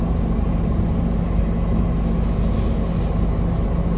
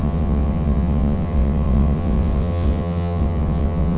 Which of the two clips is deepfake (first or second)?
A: second